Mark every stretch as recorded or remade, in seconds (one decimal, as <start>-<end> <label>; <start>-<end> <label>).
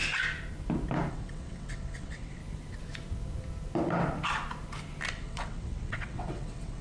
0.0-1.1 recorded; 1.1-2.4 remade; 2.4-5.1 recorded; 5.1-6.8 remade